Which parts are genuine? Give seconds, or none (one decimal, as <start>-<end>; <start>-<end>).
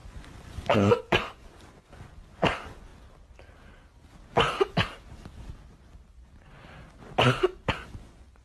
2.9-7.7